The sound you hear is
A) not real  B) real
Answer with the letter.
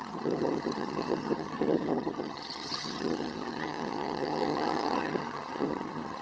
A